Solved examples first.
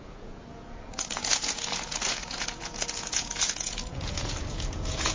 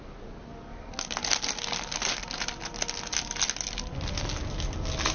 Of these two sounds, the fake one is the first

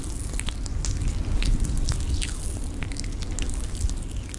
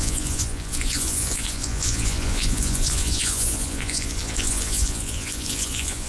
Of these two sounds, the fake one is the second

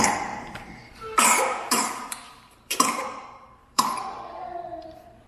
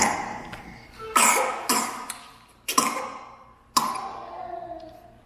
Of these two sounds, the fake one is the first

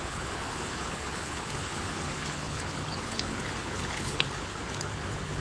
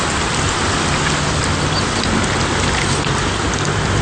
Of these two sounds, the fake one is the first